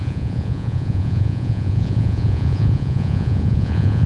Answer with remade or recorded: remade